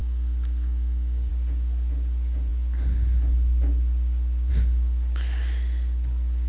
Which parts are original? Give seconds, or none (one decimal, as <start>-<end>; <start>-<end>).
1.3-6.5